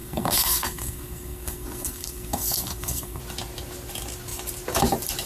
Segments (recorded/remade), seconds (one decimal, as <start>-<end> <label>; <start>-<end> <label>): 0.0-3.2 remade; 3.2-5.3 recorded